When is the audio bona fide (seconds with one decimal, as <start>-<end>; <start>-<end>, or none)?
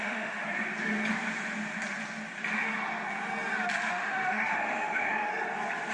0.4-3.9; 5.3-5.9